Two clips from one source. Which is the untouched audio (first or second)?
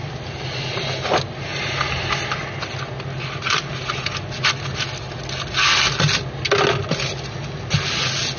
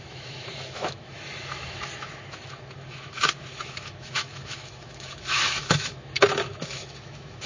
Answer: first